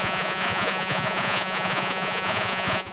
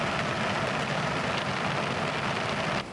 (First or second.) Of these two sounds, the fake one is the first